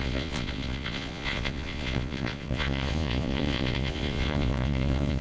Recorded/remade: remade